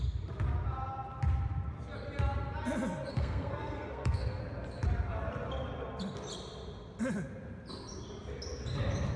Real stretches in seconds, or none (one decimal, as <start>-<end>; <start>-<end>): 0.0-3.1; 4.4-9.2